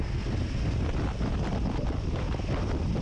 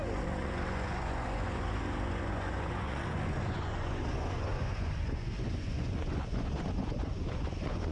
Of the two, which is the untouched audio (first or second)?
first